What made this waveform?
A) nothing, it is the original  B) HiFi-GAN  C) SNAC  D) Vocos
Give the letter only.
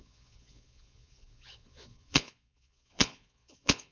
D